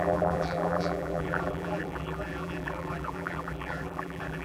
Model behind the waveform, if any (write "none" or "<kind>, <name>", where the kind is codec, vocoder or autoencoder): vocoder, BigVGAN v2